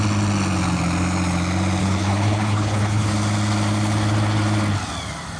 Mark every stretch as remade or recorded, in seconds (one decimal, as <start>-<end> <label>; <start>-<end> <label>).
0.0-1.8 recorded; 1.8-3.1 remade; 3.1-5.4 recorded